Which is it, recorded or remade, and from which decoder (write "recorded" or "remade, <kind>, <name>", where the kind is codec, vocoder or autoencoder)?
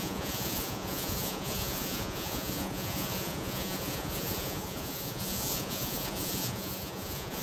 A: remade, vocoder, Vocos